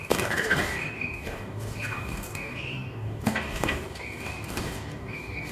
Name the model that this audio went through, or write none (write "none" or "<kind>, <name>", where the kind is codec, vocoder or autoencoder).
codec, DAC